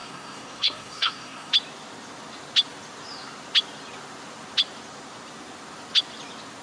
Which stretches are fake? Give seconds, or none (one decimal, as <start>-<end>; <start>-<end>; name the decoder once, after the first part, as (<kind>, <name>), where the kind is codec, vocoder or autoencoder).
0.0-1.5 (codec, SNAC)